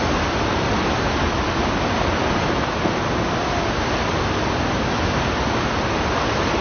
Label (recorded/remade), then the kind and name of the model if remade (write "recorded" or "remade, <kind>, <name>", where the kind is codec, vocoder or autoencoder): recorded